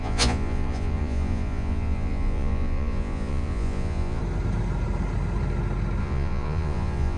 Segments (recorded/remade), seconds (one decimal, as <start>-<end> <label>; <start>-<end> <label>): 0.0-4.2 remade; 4.2-6.0 recorded; 6.0-7.2 remade